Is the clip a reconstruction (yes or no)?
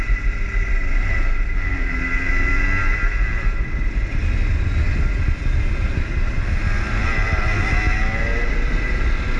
no